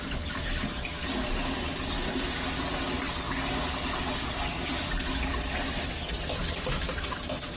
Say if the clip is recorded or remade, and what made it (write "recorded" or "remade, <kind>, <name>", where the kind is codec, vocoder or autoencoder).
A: recorded